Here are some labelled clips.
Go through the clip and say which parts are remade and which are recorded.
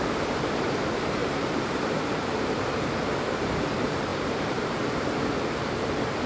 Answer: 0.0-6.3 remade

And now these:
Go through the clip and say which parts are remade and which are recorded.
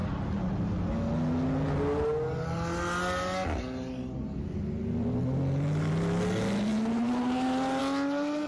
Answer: 0.0-8.5 recorded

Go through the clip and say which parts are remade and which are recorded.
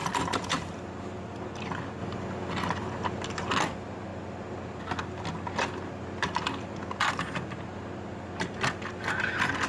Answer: 0.0-1.5 remade; 1.5-2.0 recorded; 2.0-3.6 remade; 3.6-9.7 recorded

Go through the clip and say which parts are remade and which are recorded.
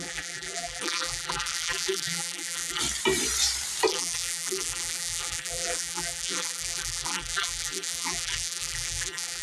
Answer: 0.0-2.8 remade; 2.8-3.9 recorded; 3.9-9.4 remade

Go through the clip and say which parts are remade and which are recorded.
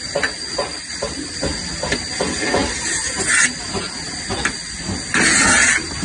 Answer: 0.0-0.7 recorded; 0.7-1.3 remade; 1.3-6.0 recorded